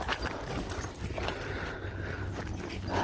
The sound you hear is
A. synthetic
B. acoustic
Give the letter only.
B